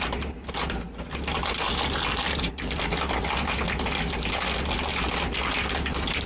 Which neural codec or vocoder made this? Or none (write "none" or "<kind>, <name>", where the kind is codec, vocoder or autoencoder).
none